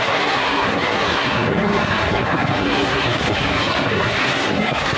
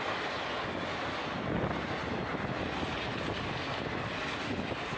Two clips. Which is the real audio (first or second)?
second